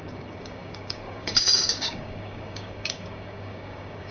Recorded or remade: remade